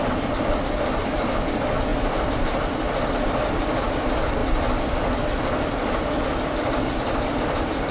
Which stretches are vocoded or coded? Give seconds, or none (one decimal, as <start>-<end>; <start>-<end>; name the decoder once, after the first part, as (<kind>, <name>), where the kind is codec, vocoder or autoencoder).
0.0-1.9 (vocoder, BigVGAN v2); 3.3-7.9